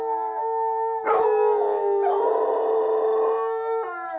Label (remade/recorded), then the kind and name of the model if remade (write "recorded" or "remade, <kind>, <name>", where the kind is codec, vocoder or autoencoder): recorded